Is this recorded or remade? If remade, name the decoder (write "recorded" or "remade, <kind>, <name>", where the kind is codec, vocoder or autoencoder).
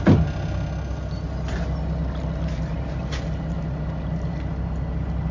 recorded